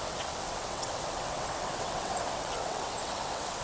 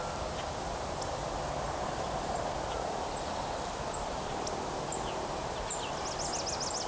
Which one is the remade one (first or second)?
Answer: first